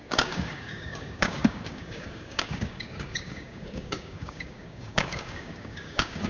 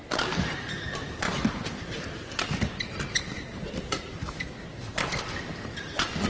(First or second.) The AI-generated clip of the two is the first